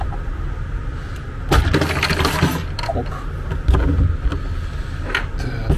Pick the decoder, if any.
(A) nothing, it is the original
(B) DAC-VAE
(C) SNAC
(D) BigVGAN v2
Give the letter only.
A